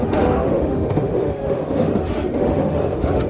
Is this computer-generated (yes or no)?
yes